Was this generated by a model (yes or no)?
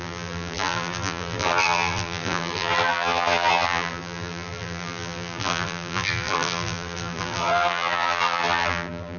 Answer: yes